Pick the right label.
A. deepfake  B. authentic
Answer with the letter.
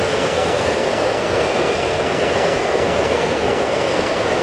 A